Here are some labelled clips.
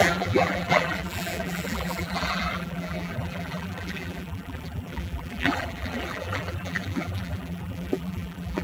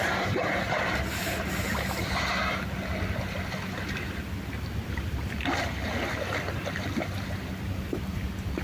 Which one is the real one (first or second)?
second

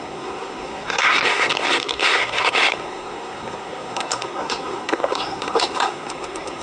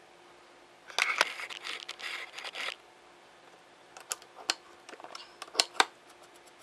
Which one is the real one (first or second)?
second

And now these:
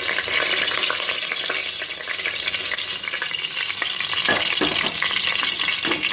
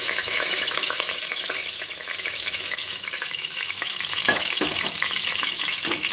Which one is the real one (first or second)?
first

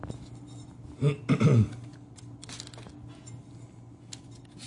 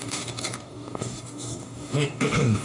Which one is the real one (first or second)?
first